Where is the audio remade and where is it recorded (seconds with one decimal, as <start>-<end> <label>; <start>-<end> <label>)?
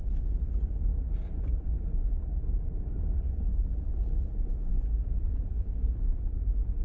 0.0-6.8 recorded